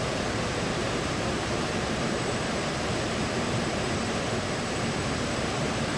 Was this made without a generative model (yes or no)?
no